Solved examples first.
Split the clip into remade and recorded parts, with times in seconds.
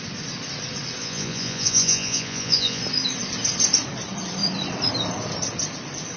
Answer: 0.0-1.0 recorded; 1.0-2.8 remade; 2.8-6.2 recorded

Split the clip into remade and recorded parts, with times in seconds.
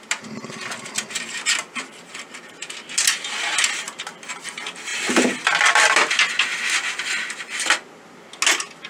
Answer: 0.0-8.9 recorded